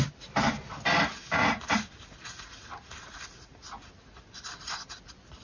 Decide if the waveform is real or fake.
real